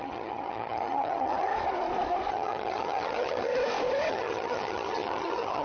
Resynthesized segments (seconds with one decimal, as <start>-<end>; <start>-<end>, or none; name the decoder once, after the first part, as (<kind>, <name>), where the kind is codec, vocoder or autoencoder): 0.0-1.5 (vocoder, HiFi-GAN); 2.3-3.5; 4.1-5.6